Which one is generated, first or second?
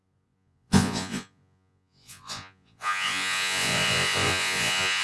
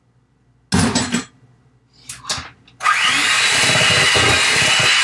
first